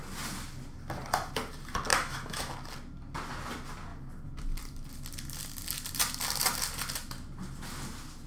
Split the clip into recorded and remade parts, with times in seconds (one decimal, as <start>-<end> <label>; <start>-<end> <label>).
0.0-1.9 recorded; 1.9-2.5 remade; 2.5-8.3 recorded